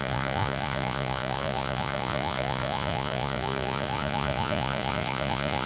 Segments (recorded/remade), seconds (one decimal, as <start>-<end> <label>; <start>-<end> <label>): 0.0-5.7 remade